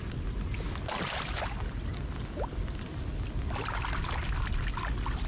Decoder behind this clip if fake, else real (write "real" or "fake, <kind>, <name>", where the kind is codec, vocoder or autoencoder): real